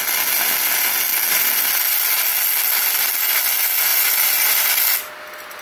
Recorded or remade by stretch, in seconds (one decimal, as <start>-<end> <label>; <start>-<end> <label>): 0.0-3.9 recorded; 3.9-5.1 remade; 5.1-5.6 recorded